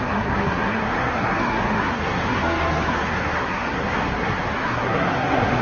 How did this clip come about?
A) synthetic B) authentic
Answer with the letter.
A